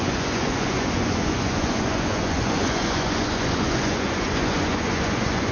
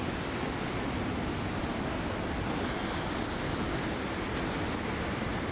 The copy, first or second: first